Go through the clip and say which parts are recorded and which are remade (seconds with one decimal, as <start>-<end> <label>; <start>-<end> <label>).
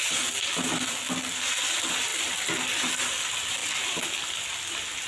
0.0-5.1 recorded